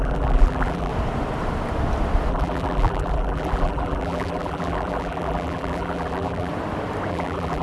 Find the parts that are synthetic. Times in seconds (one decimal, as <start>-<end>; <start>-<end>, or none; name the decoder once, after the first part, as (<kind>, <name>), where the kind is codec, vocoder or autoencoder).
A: 0.0-0.9 (vocoder, BigVGAN v2); 2.3-6.5; 7.1-7.6